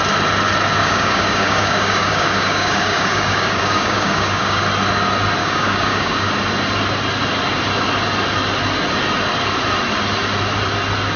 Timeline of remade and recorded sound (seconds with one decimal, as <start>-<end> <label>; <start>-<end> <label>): 0.0-0.8 recorded; 0.8-4.6 remade; 4.6-5.4 recorded; 5.4-6.3 remade; 6.3-11.2 recorded